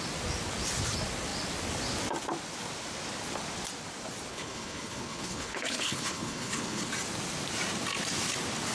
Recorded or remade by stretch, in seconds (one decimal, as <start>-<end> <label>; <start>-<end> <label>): 0.0-4.3 recorded; 4.3-6.9 remade; 6.9-8.7 recorded